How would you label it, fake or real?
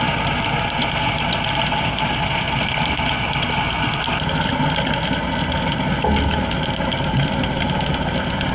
real